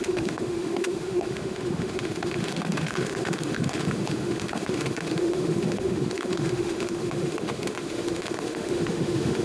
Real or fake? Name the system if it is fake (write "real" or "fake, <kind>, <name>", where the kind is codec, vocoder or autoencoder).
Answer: fake, autoencoder, DAC-VAE